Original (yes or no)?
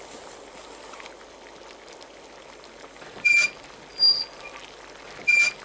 yes